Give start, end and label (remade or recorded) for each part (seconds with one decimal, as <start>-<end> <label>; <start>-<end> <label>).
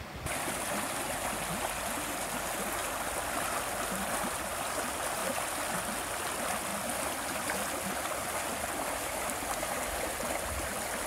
0.0-5.2 recorded; 5.2-5.7 remade; 5.7-6.7 recorded; 6.7-8.2 remade; 8.2-11.1 recorded